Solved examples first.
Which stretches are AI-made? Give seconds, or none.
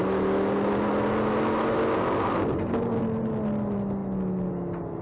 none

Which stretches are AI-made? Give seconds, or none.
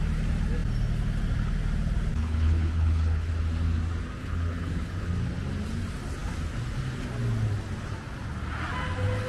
2.1-3.3 (codec, HILCodec); 4.2-5.1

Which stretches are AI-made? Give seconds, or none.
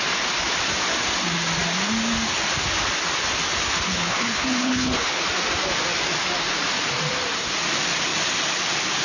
3.9-5.2 (codec, HILCodec)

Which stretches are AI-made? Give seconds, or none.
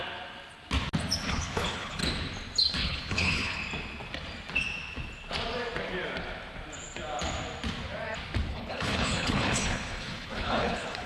1.2-2.0 (codec, HILCodec); 2.7-3.6; 8.5-11.1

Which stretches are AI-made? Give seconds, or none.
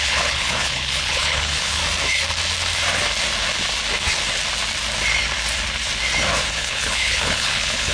0.0-1.8 (codec, HILCodec); 6.5-7.9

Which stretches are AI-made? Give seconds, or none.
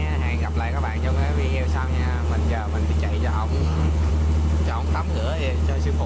3.6-4.1 (codec, HILCodec)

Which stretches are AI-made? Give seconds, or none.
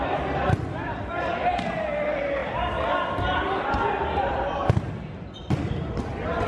none